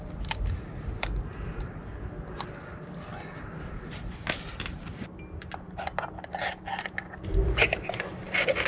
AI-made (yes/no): no